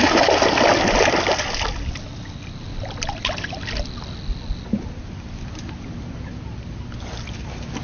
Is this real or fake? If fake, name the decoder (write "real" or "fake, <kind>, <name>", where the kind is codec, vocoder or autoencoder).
real